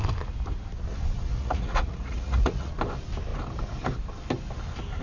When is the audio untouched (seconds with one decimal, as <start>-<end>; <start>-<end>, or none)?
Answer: 0.0-1.3; 2.7-5.0

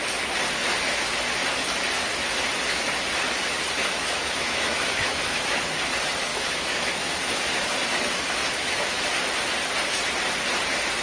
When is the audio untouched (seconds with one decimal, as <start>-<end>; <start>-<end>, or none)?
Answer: 0.0-3.8; 5.6-6.3; 7.2-8.4; 8.9-11.0

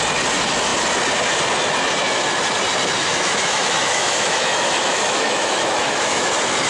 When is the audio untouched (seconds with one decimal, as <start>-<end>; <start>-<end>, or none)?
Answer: 0.0-3.0; 6.3-6.7

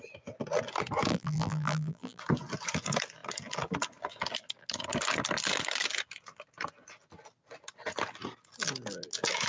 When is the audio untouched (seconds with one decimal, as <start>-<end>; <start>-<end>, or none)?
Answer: 0.0-1.1; 2.2-9.5

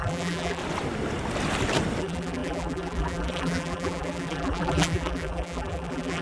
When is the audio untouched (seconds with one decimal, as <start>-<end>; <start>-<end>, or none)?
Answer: 0.6-2.0

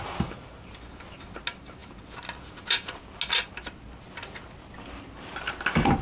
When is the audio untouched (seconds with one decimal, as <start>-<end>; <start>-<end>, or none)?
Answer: 0.0-6.0